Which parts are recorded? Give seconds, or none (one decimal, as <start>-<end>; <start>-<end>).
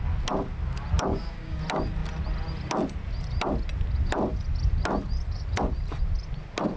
0.0-1.1; 1.6-6.8